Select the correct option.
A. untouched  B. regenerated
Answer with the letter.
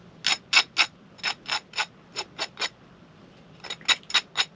A